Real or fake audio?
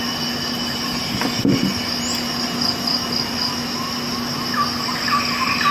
real